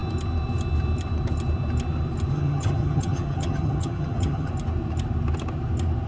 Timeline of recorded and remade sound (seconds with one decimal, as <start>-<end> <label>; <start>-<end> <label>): 0.0-2.3 recorded; 2.3-4.5 remade; 4.5-6.1 recorded